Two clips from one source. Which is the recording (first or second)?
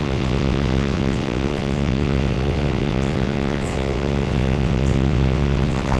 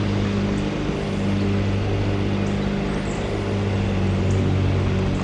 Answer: second